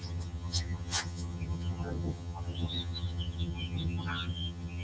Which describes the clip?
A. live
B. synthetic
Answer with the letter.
B